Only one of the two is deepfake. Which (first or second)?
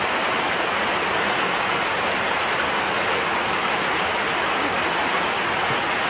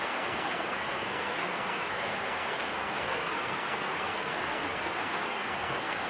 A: second